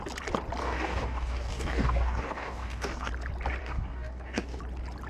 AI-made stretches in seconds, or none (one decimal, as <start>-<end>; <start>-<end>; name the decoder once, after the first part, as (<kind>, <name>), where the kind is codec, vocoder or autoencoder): 0.6-3.1 (codec, DAC); 3.6-4.6